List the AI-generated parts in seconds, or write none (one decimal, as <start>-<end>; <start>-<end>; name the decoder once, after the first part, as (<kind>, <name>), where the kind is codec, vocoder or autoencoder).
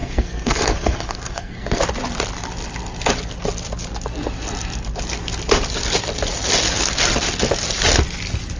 0.0-1.8 (codec, SNAC)